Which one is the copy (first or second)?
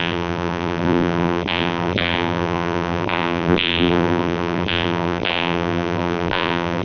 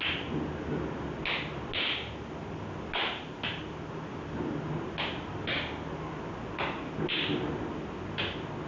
first